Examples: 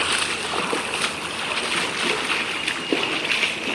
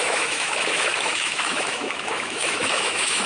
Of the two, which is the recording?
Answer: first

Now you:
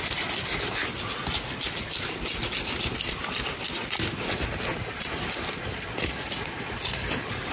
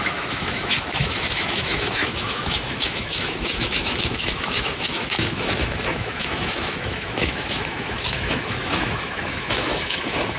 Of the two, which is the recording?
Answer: first